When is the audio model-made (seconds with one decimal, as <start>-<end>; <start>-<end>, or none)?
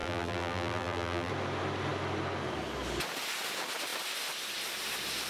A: 0.0-1.3